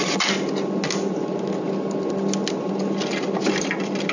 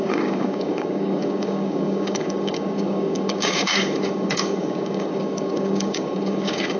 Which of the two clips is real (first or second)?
first